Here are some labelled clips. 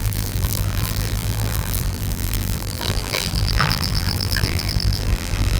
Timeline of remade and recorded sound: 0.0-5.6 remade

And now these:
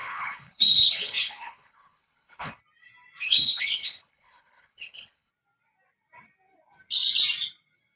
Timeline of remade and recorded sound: 0.0-2.6 remade; 2.6-3.2 recorded; 3.2-5.3 remade; 5.3-8.0 recorded

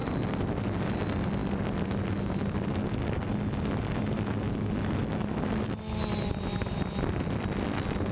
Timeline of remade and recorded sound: 0.0-8.1 recorded

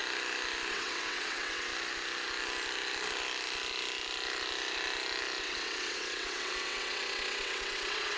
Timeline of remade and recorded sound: 0.0-0.7 recorded; 0.7-1.7 remade; 1.7-5.4 recorded; 5.4-8.2 remade

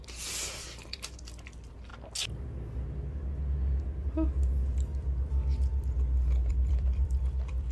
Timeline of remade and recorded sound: 0.0-1.9 remade; 1.9-6.5 recorded; 6.5-7.7 remade

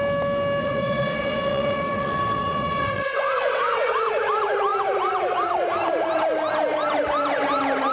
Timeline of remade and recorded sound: 0.0-0.6 recorded; 0.6-4.0 remade; 4.0-7.9 recorded

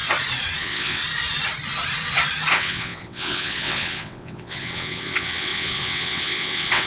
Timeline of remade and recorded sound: 0.0-0.6 recorded; 0.6-1.0 remade; 1.0-2.5 recorded; 2.5-6.9 remade

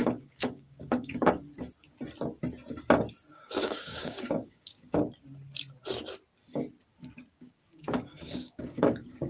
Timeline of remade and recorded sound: 0.0-1.3 remade; 1.3-3.3 recorded; 3.3-5.0 remade; 5.0-7.3 recorded; 7.3-9.3 remade